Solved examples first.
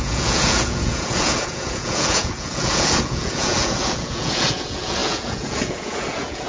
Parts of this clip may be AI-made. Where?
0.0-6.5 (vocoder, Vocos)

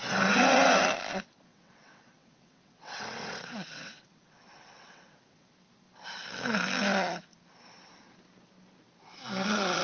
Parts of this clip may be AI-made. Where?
0.0-0.7 (vocoder, WaveNeXt); 1.5-5.5